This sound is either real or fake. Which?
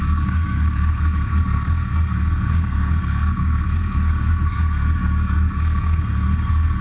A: fake